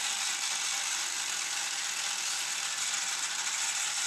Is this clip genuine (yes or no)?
yes